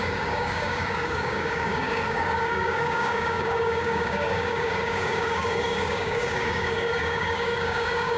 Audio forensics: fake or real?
fake